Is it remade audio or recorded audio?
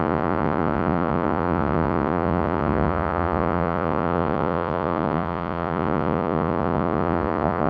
remade